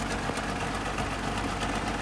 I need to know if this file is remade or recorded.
recorded